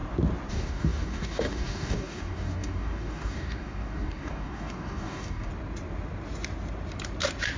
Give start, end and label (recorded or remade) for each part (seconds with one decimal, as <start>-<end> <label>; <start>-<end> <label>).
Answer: 0.0-0.5 recorded; 0.5-5.5 remade; 5.5-7.6 recorded